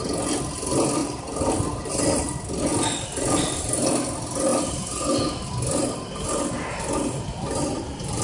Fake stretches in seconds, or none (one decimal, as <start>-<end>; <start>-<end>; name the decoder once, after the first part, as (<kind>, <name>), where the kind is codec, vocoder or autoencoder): 1.0-2.2 (vocoder, BigVGAN v2)